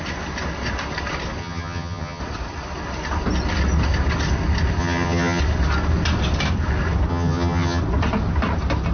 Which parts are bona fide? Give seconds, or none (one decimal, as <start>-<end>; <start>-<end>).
0.0-1.4; 2.2-4.8; 5.4-7.1; 7.8-8.9